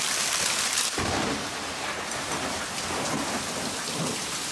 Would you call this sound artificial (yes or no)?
yes